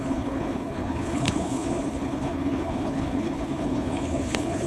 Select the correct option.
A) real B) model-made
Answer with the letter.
B